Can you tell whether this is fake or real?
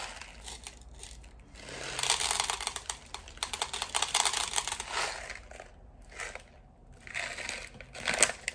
real